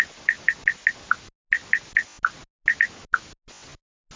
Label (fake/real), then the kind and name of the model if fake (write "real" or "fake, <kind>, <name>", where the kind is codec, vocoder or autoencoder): real